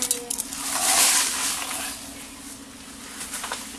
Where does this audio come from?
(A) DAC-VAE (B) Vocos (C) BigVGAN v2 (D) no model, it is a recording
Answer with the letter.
D